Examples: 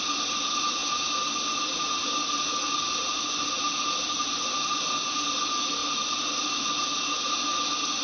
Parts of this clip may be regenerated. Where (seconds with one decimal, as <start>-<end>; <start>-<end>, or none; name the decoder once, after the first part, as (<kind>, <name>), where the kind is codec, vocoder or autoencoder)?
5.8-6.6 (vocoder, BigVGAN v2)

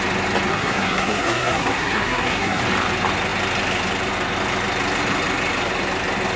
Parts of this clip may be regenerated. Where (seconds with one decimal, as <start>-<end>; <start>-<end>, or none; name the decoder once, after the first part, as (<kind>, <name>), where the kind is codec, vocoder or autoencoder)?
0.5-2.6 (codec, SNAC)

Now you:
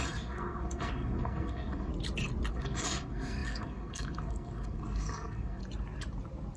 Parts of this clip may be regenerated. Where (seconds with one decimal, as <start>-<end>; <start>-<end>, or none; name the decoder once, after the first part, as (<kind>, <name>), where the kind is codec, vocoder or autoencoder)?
0.0-1.9 (codec, SNAC); 2.5-5.6

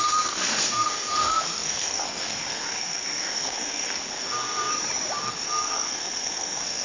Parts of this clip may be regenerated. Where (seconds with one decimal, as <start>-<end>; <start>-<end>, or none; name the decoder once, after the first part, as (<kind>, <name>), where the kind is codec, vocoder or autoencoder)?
0.0-4.7 (codec, SNAC); 5.2-6.8